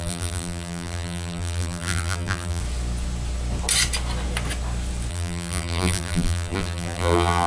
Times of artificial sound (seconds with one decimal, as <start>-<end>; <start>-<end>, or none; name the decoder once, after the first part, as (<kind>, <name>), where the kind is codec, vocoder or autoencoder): 0.0-2.6 (vocoder, BigVGAN v2); 5.1-7.5